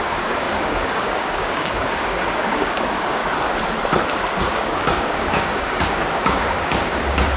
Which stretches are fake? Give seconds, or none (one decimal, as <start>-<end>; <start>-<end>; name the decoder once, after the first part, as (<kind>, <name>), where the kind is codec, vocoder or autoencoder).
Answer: 0.0-3.2 (codec, DAC); 4.4-7.4